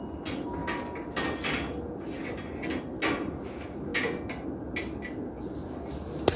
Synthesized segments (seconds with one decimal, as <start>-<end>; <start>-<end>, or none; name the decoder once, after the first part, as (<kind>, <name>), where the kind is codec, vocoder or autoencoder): none